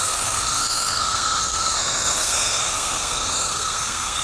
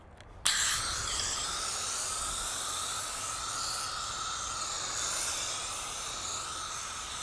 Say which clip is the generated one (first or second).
first